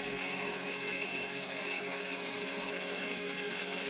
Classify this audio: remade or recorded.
remade